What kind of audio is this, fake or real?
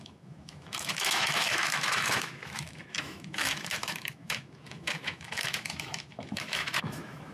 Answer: fake